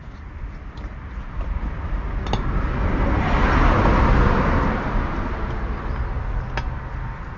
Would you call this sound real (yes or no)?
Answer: yes